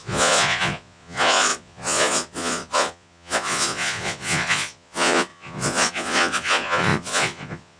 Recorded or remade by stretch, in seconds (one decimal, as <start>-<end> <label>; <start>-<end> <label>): 0.0-7.8 remade